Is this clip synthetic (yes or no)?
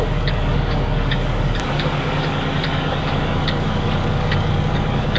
yes